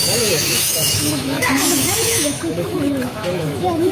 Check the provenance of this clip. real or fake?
fake